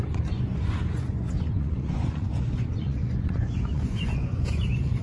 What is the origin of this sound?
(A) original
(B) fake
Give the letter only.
B